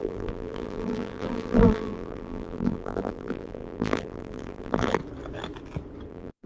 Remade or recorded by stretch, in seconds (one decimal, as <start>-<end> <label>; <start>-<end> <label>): 0.0-5.0 remade; 5.0-6.1 recorded; 6.1-6.5 remade